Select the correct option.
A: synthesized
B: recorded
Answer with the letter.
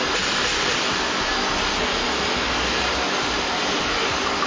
B